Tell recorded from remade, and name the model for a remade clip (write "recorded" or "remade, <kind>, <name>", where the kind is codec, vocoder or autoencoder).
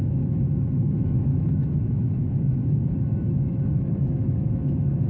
remade, autoencoder, DAC-VAE